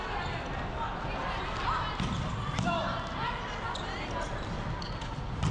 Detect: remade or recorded recorded